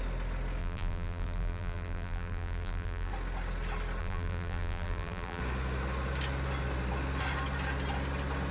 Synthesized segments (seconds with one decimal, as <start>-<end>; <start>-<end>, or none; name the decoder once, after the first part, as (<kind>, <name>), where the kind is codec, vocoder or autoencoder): 0.6-3.1 (vocoder, BigVGAN v2); 4.0-5.4

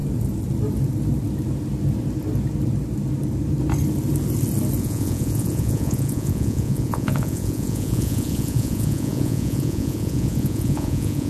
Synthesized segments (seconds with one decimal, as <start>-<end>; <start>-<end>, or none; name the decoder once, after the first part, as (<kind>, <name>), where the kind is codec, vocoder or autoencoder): 4.8-11.3 (vocoder, Vocos)

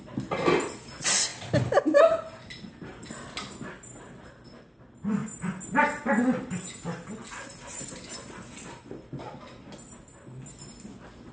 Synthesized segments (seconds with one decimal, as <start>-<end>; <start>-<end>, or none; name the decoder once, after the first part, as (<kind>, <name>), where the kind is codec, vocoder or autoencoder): none